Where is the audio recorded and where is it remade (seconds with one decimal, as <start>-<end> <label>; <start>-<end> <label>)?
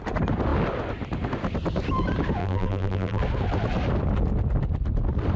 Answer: 0.0-2.4 recorded; 2.4-3.2 remade; 3.2-5.4 recorded